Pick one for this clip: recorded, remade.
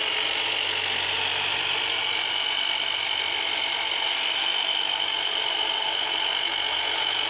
recorded